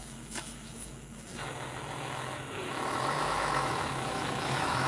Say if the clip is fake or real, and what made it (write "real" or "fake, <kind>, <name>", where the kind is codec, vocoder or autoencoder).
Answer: fake, autoencoder, DAC-VAE